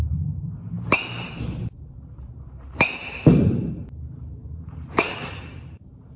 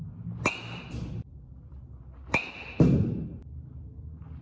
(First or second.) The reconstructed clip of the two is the first